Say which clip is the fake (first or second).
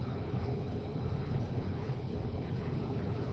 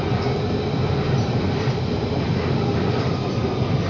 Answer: first